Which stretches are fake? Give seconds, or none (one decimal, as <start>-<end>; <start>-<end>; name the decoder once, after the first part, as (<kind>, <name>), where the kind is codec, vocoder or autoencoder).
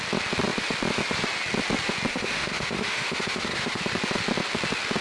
2.1-3.8 (autoencoder, DAC-VAE)